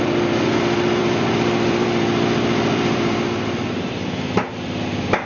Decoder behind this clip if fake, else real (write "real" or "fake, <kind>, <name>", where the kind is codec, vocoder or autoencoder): fake, vocoder, BigVGAN v2